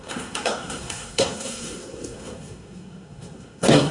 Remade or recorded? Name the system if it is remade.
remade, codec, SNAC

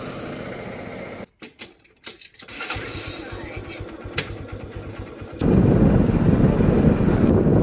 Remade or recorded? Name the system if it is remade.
recorded